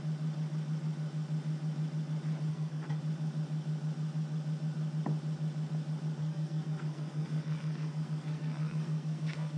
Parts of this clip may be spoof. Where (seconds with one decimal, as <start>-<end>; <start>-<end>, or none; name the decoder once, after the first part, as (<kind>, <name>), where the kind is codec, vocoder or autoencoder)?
2.5-3.0 (codec, SNAC); 6.2-9.6

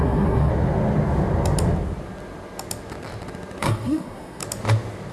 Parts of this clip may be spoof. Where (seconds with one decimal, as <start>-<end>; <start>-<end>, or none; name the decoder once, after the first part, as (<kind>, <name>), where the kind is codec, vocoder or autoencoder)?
0.0-0.5 (codec, SNAC); 3.6-4.4

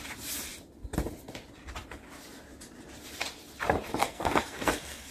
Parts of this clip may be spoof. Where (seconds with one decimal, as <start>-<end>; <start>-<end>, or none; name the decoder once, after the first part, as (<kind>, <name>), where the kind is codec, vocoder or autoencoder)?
4.0-5.1 (codec, SNAC)

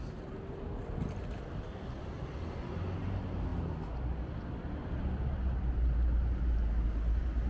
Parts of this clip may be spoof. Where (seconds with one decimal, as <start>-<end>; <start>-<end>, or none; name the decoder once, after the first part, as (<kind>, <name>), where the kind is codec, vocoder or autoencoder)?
none

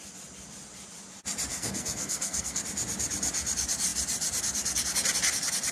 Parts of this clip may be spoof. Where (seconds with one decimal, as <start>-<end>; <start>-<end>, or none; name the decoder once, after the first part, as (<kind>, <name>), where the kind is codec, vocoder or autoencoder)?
1.5-2.6 (codec, SNAC)

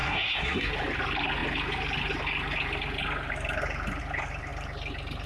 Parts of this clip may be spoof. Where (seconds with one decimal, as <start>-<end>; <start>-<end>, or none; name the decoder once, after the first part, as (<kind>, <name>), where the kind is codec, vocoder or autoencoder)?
0.0-0.7 (codec, SNAC)

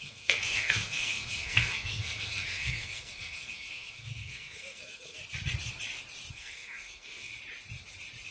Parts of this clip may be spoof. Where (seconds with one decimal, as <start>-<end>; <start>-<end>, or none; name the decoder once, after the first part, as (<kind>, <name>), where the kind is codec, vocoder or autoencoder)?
0.0-5.2 (codec, SNAC); 6.3-7.3